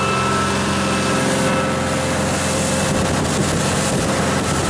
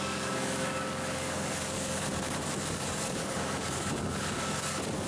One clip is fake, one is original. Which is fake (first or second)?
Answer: second